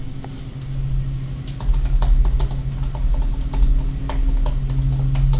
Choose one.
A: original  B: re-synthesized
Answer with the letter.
A